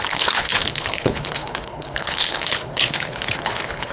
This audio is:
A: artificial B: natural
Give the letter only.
A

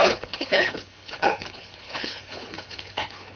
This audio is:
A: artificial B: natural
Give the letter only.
A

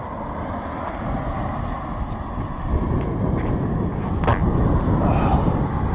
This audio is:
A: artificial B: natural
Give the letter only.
B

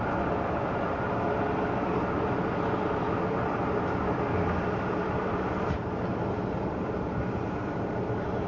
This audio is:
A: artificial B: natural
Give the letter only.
B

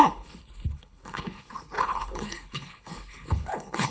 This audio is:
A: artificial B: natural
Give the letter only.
A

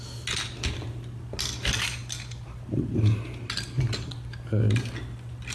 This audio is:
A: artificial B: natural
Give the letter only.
B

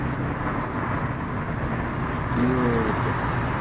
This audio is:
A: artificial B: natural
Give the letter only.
B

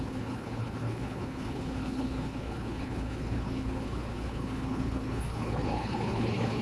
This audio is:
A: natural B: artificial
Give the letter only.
B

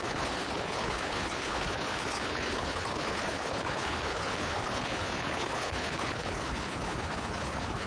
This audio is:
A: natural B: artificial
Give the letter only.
B